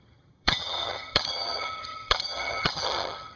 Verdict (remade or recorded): remade